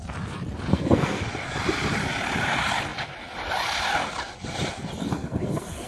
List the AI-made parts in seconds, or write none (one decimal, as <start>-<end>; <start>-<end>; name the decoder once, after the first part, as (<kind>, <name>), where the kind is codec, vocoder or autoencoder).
0.7-1.2 (codec, SNAC); 5.1-5.9